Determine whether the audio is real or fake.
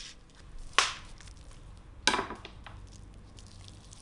real